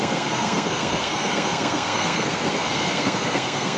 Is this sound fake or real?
fake